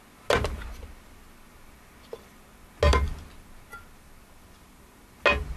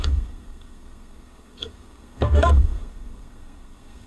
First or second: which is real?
first